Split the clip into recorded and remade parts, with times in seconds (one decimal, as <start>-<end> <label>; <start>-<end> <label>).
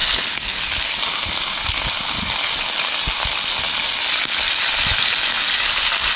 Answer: 0.0-0.6 remade; 0.6-6.2 recorded